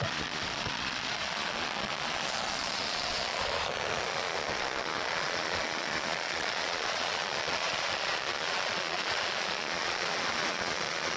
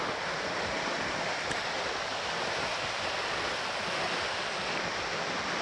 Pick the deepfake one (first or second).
first